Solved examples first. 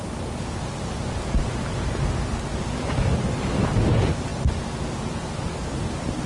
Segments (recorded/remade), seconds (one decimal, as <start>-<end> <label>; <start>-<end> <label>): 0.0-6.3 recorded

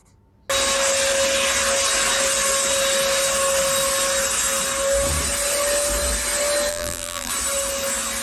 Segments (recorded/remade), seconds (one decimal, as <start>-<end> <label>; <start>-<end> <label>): 0.0-6.7 recorded; 6.7-7.3 remade; 7.3-8.2 recorded

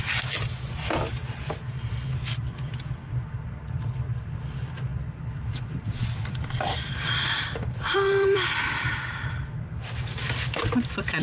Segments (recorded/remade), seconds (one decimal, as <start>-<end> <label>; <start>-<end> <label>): 0.0-3.0 recorded; 3.0-3.5 remade; 3.5-4.9 recorded; 4.9-9.5 remade; 9.5-11.2 recorded

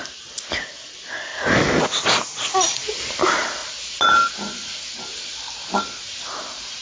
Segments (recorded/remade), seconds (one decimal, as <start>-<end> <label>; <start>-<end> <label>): 0.0-1.3 remade; 1.3-3.2 recorded; 3.2-3.6 remade; 3.6-5.8 recorded; 5.8-6.8 remade

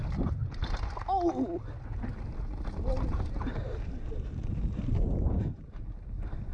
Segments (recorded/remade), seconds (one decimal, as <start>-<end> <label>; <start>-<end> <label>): 0.0-6.5 recorded